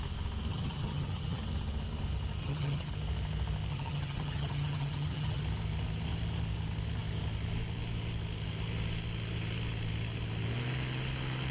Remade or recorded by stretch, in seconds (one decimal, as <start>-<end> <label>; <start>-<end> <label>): 0.0-0.5 recorded; 0.5-1.4 remade; 1.4-2.4 recorded; 2.4-2.9 remade; 2.9-3.7 recorded; 3.7-5.4 remade; 5.4-11.5 recorded